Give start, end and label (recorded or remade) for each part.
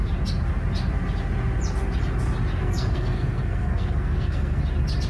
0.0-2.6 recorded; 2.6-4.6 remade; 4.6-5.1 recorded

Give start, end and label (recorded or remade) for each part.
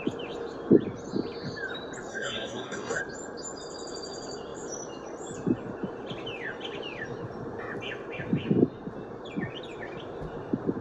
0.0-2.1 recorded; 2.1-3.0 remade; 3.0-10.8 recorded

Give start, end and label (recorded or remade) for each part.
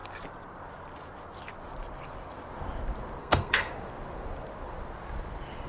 0.0-3.2 recorded; 3.2-3.7 remade; 3.7-5.7 recorded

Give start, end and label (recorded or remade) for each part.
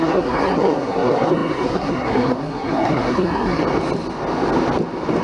0.0-3.6 remade; 3.6-5.2 recorded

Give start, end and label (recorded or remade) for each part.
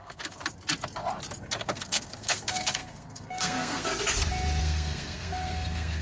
0.0-0.4 remade; 0.4-1.6 recorded; 1.6-3.9 remade; 3.9-4.6 recorded; 4.6-6.0 remade